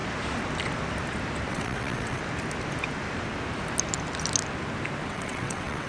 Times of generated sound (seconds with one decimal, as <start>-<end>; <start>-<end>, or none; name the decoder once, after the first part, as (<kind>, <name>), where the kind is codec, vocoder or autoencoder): 1.5-2.2 (vocoder, WaveNeXt); 5.1-5.9